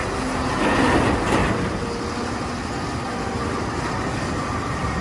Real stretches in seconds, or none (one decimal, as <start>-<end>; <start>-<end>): 0.0-5.0